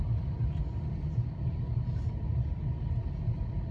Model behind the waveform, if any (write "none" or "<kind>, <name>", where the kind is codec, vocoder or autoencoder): none